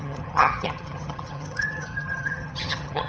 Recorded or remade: remade